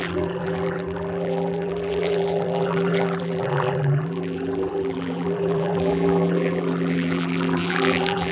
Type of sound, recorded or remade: remade